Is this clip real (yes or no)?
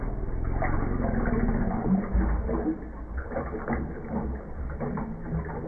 yes